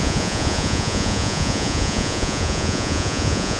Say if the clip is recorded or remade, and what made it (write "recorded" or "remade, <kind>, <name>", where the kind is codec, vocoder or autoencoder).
remade, vocoder, Vocos